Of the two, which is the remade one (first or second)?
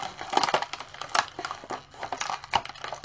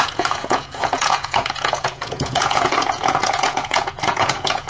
second